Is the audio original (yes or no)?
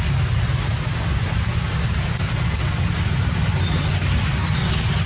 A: yes